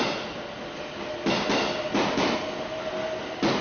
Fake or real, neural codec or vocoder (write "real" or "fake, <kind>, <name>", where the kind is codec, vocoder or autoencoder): real